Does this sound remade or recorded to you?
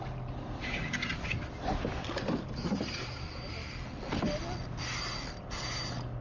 recorded